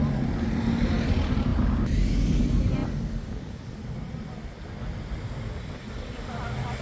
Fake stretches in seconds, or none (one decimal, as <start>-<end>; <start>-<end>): none

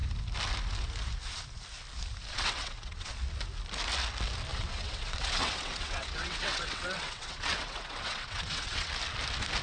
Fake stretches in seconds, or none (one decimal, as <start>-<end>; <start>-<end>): 2.3-3.1; 4.5-8.9

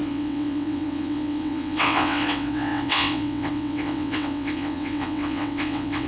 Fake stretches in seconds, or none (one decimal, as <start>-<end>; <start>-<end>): 0.0-6.1

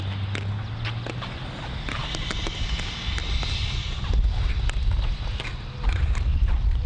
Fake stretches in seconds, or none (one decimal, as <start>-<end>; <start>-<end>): none

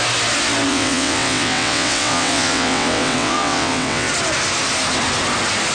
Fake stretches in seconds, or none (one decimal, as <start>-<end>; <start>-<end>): 0.7-4.1

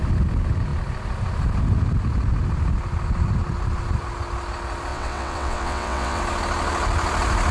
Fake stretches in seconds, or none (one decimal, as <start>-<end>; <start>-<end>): 4.9-6.2

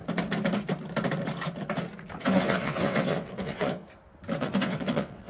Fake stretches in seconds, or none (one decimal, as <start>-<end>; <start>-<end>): 2.2-3.8; 4.4-5.3